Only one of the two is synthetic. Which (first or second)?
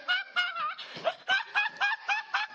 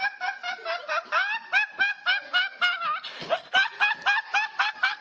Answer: first